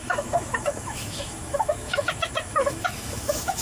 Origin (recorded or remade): remade